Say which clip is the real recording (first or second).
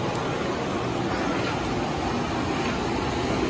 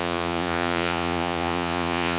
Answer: first